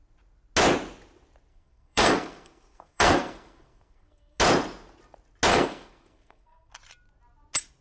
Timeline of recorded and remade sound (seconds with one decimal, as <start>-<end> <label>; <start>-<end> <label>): 0.0-1.5 recorded; 1.5-4.4 remade; 4.4-5.5 recorded; 5.5-6.7 remade; 6.7-7.8 recorded